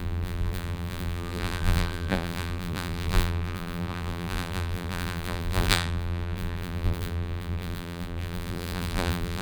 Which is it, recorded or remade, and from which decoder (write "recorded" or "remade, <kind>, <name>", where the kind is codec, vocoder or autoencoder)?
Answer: remade, vocoder, BigVGAN v2